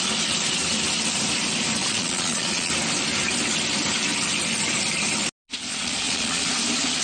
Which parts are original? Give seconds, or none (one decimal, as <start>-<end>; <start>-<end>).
0.0-1.8; 2.7-5.7; 6.5-7.0